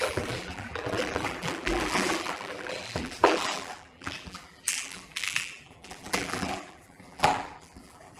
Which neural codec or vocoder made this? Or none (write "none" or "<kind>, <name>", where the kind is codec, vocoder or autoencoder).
vocoder, BigVGAN v2